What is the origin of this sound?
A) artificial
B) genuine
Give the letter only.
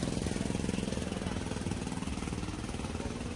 B